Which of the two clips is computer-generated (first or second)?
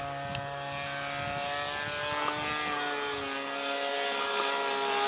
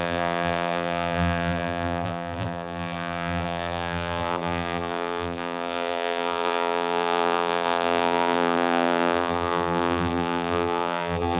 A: second